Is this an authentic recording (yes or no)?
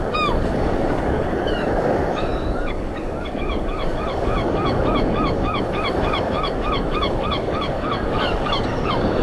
no